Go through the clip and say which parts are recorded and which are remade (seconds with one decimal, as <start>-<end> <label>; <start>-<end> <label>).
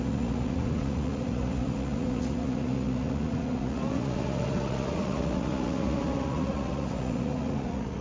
0.0-8.0 remade